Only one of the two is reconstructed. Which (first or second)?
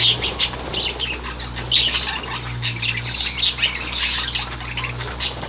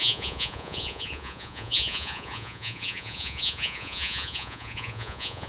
second